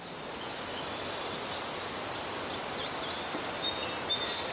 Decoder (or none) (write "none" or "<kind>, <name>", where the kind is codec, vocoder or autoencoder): none